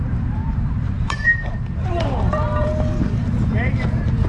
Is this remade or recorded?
remade